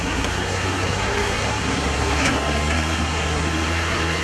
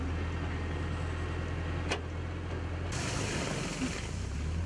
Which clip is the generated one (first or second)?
first